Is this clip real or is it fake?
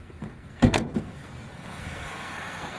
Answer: fake